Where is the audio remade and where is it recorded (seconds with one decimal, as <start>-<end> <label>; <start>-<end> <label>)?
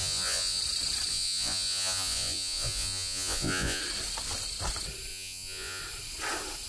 0.0-0.6 remade; 0.6-1.1 recorded; 1.1-3.8 remade; 3.8-5.1 recorded; 5.1-5.8 remade; 5.8-6.7 recorded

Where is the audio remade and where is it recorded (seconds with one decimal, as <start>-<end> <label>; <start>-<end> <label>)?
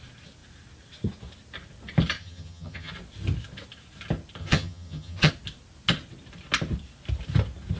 0.0-2.2 recorded; 2.2-2.9 remade; 2.9-4.4 recorded; 4.4-5.3 remade; 5.3-7.8 recorded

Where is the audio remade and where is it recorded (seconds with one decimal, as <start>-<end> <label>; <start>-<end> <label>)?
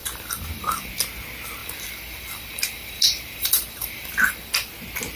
0.0-0.9 remade; 0.9-1.6 recorded; 1.6-4.7 remade; 4.7-5.2 recorded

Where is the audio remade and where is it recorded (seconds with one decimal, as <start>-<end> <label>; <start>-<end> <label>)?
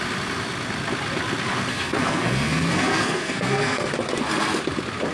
0.0-1.7 recorded; 1.7-3.9 remade; 3.9-5.1 recorded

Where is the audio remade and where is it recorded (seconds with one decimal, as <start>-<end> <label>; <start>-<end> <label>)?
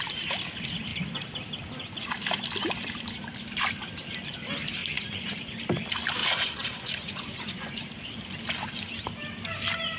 0.0-4.8 recorded; 4.8-5.6 remade; 5.6-6.2 recorded; 6.2-7.9 remade; 7.9-10.0 recorded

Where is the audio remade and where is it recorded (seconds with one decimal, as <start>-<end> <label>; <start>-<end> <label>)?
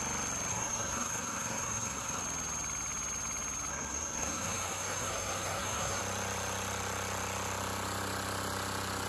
0.0-0.5 recorded; 0.5-2.2 remade; 2.2-3.7 recorded; 3.7-6.0 remade; 6.0-9.1 recorded